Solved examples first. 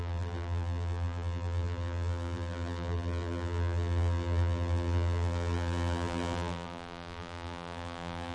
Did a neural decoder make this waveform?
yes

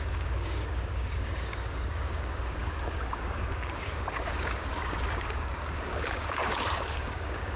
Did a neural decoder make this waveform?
yes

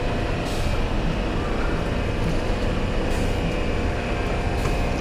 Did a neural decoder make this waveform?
no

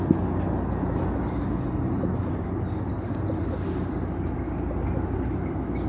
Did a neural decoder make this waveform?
no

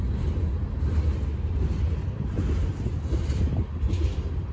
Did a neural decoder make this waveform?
no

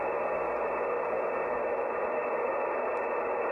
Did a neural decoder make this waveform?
no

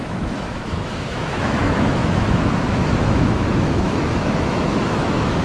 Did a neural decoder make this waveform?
yes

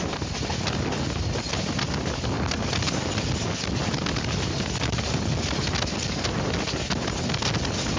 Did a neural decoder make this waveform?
no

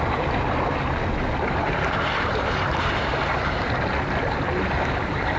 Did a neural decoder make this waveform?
no